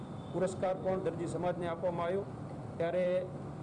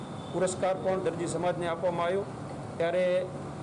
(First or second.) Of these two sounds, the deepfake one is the first